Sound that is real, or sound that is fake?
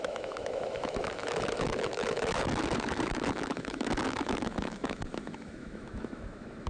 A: fake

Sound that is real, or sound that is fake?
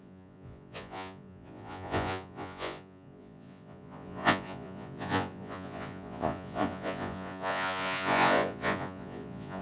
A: fake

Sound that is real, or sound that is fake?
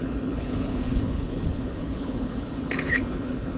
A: fake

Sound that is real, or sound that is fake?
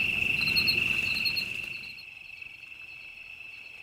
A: real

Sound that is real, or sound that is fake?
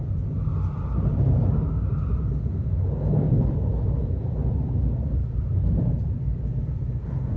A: real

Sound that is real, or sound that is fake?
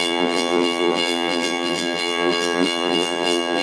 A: fake